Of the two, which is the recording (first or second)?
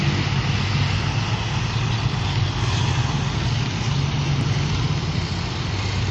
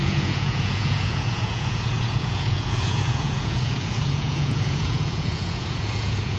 first